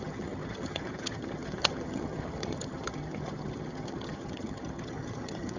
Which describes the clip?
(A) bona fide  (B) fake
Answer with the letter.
B